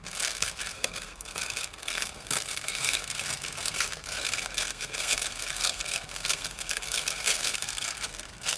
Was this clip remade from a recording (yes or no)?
yes